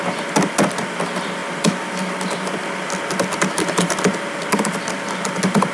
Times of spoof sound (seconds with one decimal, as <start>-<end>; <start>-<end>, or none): none